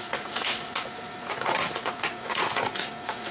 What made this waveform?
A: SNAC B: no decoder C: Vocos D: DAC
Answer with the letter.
C